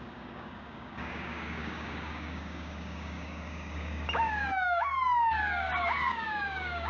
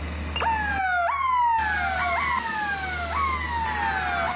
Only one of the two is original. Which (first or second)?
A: second